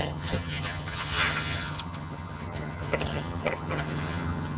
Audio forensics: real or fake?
fake